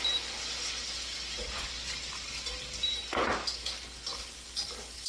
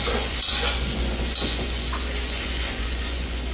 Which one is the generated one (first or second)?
second